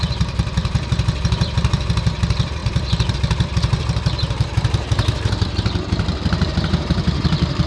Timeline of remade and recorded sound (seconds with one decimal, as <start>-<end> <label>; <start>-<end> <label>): 0.0-7.7 remade